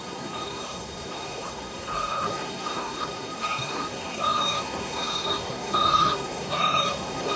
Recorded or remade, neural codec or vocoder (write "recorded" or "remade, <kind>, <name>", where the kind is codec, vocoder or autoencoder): remade, codec, SNAC